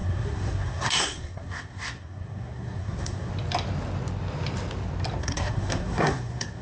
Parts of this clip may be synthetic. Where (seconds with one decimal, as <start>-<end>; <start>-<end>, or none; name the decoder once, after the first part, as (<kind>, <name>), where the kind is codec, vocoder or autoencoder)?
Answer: 0.0-3.3 (codec, SNAC); 5.2-6.6